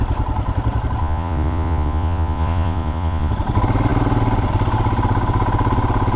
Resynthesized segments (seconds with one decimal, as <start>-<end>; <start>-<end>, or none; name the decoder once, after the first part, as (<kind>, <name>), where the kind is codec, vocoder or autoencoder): 1.0-3.3 (vocoder, Vocos)

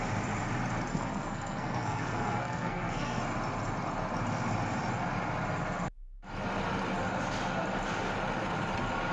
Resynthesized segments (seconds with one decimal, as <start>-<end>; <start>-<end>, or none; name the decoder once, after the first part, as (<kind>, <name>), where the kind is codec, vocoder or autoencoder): 0.9-3.2 (codec, SNAC)

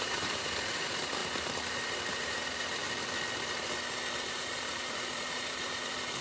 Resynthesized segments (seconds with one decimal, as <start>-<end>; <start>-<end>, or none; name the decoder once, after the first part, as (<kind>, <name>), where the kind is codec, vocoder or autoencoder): 0.0-1.2 (vocoder, BigVGAN v2); 2.1-2.8; 4.2-6.2

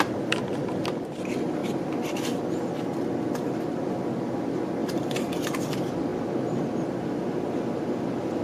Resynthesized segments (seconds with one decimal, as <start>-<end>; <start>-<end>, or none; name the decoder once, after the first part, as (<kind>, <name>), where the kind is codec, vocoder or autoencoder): 1.6-2.2 (vocoder, BigVGAN v2); 4.8-5.6

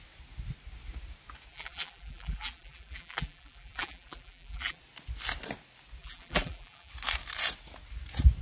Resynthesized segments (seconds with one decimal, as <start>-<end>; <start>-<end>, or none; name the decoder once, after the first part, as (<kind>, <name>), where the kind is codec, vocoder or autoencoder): 1.5-4.8 (vocoder, BigVGAN v2); 6.0-6.9

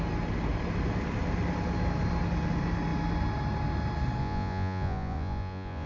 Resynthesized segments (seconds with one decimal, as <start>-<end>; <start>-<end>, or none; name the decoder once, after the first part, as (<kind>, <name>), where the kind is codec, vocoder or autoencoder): 4.2-5.9 (vocoder, Vocos)

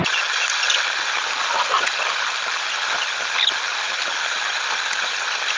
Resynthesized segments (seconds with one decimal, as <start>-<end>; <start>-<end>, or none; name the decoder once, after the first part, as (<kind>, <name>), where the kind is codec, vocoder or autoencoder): none